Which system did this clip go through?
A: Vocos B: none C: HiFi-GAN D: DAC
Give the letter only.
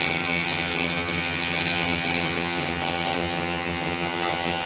C